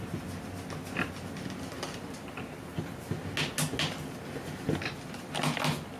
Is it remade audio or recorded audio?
recorded